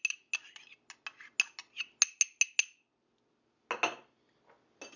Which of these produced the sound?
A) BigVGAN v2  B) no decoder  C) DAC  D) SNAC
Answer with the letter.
B